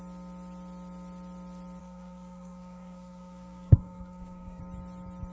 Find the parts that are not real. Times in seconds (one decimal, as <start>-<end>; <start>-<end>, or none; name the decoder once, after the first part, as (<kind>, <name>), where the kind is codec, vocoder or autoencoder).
1.8-4.6 (codec, SNAC)